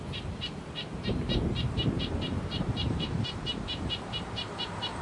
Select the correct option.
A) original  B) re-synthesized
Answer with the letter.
B